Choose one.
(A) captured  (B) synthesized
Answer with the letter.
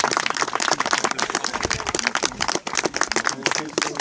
A